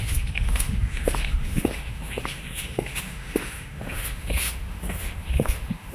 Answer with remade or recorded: remade